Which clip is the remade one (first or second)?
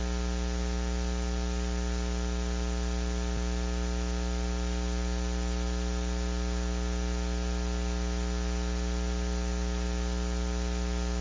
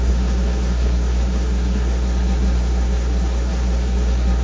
second